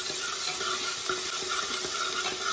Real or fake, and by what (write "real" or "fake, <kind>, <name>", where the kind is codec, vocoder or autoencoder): real